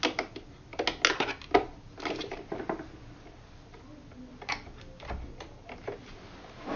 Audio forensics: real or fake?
real